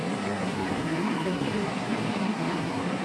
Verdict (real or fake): fake